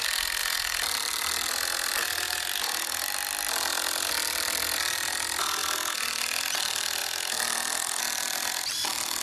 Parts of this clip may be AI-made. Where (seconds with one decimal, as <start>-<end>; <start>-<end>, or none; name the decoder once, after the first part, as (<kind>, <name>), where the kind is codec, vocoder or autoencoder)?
0.4-1.9 (vocoder, BigVGAN v2)